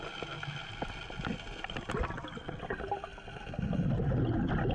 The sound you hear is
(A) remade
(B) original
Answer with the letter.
B